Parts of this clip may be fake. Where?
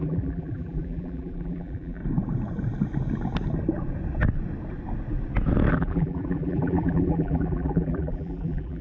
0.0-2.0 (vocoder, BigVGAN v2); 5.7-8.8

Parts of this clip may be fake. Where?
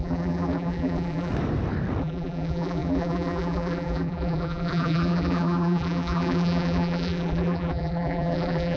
0.0-1.3 (vocoder, BigVGAN v2); 2.0-8.8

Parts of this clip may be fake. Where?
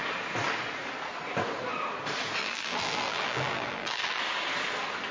2.4-4.2 (vocoder, BigVGAN v2)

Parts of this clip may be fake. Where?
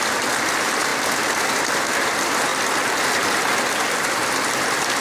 none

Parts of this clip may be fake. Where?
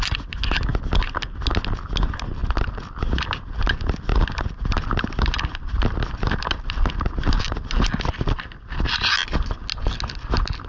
none